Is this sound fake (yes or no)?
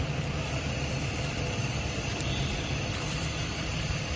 yes